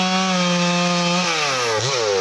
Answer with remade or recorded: recorded